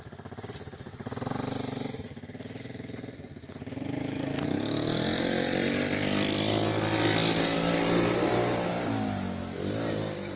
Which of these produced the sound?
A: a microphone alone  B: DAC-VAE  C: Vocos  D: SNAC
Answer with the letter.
A